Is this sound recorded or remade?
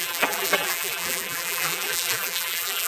remade